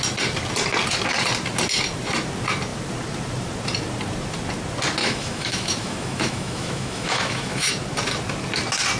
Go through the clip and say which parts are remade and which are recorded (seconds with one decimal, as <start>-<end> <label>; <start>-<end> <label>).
0.0-5.0 recorded; 5.0-7.7 remade; 7.7-9.0 recorded